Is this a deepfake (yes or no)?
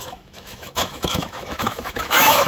yes